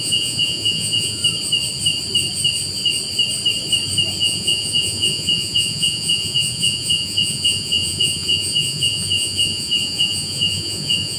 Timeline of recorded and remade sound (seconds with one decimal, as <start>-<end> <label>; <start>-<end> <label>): 0.0-1.2 remade; 1.2-4.2 recorded; 4.2-11.2 remade